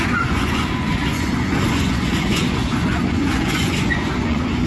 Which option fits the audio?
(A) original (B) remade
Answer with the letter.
B